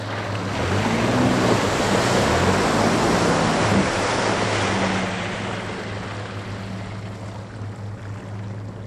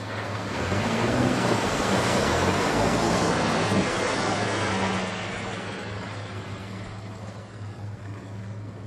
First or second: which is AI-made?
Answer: second